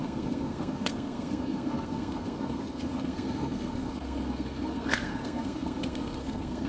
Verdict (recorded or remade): remade